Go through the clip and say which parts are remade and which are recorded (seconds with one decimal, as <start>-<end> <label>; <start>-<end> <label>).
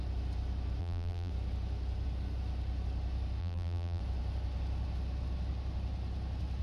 0.0-0.8 recorded; 0.8-1.3 remade; 1.3-3.4 recorded; 3.4-4.0 remade; 4.0-6.6 recorded